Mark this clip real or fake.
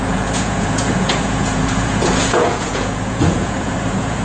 fake